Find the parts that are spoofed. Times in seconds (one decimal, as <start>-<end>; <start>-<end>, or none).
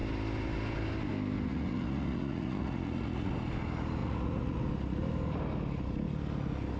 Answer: 1.5-3.3; 4.0-4.6